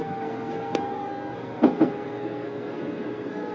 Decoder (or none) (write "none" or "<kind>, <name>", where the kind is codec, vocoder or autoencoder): codec, SNAC